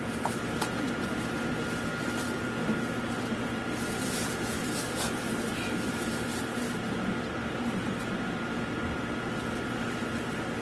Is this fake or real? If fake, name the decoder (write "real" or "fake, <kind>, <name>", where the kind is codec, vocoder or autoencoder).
real